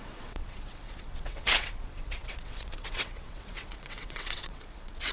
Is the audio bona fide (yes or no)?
no